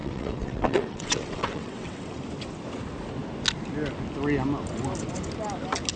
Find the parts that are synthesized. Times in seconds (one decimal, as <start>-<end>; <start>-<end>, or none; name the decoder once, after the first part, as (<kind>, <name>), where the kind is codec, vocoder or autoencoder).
0.0-2.2 (vocoder, WaveNeXt)